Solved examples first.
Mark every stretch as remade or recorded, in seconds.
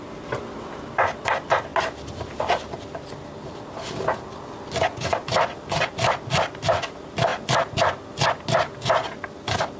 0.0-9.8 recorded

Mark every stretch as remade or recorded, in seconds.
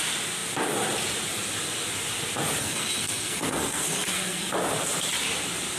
0.0-2.6 recorded; 2.6-4.5 remade; 4.5-5.8 recorded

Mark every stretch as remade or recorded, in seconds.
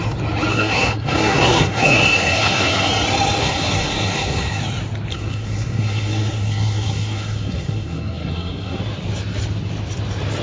0.0-0.5 recorded; 0.5-2.9 remade; 2.9-3.4 recorded; 3.4-4.6 remade; 4.6-5.1 recorded; 5.1-8.8 remade; 8.8-10.4 recorded